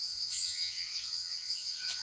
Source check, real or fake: fake